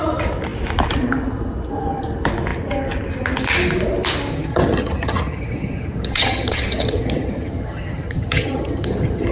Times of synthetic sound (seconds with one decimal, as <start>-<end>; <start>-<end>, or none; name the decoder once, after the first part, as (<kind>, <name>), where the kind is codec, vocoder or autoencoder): 4.3-9.3 (vocoder, HiFi-GAN)